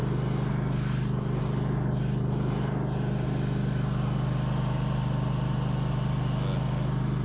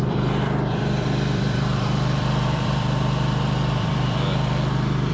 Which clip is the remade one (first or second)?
second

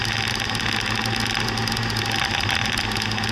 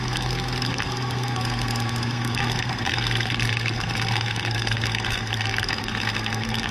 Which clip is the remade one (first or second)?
second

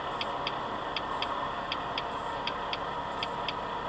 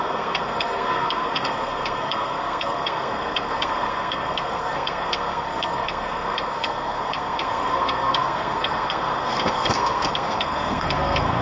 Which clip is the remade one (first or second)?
second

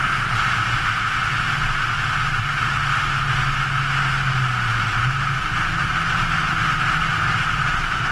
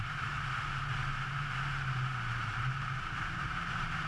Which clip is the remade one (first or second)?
second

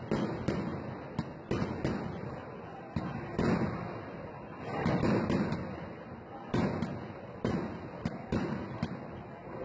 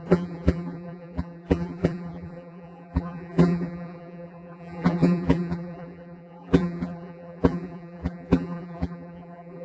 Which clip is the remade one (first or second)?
second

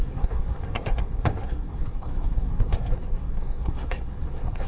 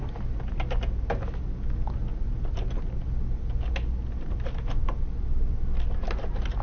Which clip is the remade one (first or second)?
first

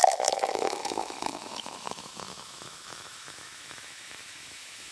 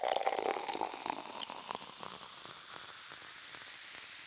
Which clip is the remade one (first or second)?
first